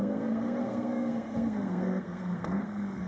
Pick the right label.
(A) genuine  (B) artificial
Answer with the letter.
B